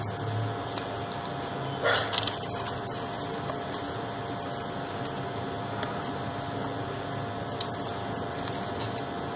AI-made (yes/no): no